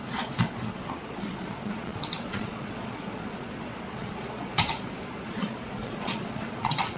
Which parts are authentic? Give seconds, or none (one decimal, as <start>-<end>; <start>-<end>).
none